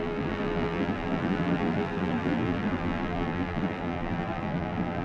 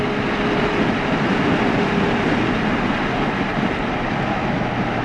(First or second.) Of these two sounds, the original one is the second